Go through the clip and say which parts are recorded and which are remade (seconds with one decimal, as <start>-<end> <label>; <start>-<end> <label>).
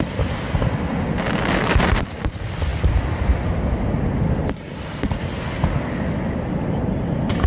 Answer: 0.0-7.5 recorded